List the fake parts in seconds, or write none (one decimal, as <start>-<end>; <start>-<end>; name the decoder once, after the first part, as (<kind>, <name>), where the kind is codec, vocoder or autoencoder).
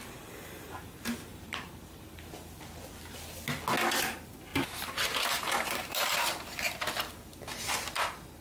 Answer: 1.3-2.0 (vocoder, BigVGAN v2); 4.5-6.8